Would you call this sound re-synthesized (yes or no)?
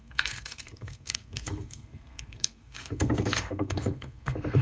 yes